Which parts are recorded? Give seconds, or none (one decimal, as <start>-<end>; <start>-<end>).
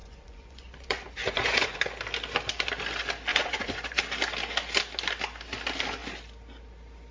1.8-3.3; 4.0-7.1